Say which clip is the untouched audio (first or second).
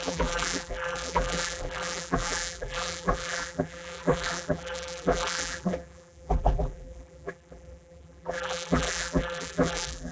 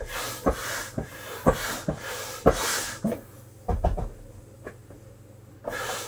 second